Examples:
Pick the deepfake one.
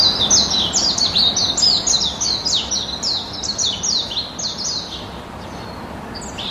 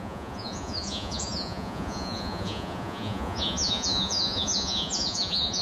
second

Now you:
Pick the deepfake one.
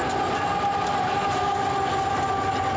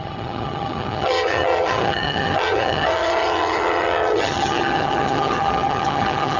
second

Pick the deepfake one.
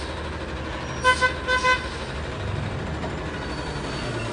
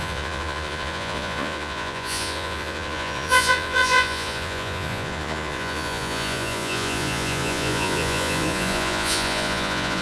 second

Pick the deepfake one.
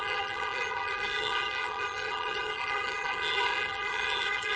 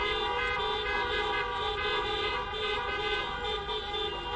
first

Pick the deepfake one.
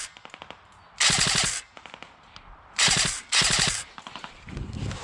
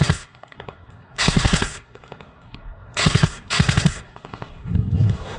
second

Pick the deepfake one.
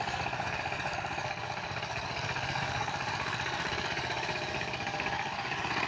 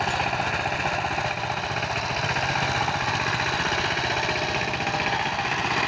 first